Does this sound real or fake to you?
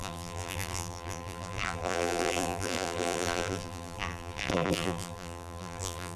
fake